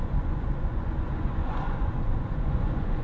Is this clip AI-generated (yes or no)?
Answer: yes